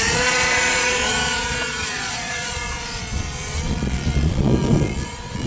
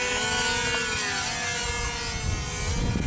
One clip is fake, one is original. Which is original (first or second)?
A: second